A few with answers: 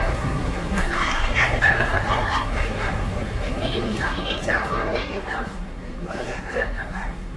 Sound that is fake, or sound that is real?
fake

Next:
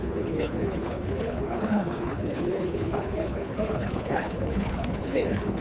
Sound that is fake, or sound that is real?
fake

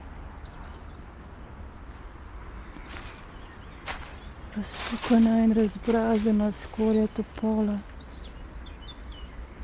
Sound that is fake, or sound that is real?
real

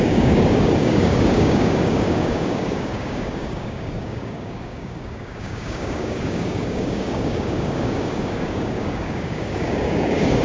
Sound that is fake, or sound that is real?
fake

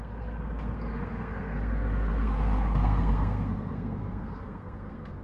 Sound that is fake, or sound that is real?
fake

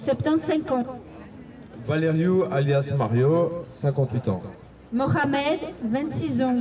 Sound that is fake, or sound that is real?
real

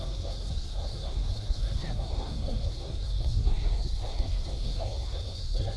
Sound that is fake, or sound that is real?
fake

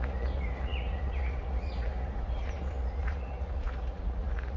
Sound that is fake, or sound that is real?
fake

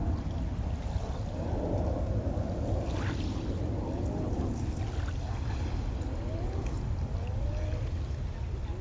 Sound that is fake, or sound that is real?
real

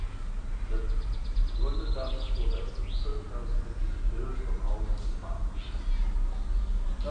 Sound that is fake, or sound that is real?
real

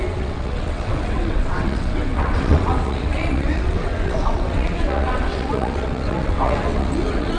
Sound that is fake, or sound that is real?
fake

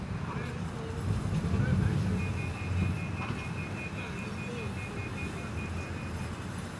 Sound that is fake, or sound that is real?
real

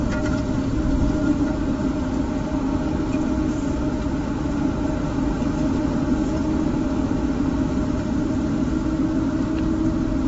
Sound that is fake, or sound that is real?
real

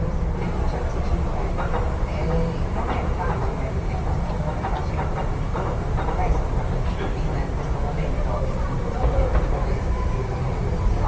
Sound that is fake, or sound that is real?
fake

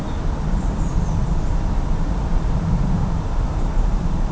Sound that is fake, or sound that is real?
real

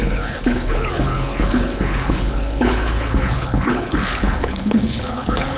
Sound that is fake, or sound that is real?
fake